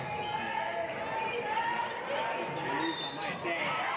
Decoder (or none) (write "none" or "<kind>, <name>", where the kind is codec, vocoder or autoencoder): none